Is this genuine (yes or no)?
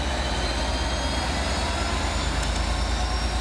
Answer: yes